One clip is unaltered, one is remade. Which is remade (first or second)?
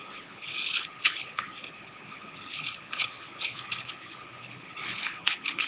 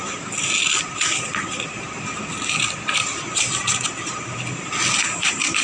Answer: first